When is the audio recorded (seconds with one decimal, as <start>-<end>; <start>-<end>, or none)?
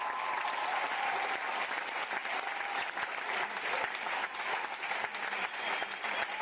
0.0-6.4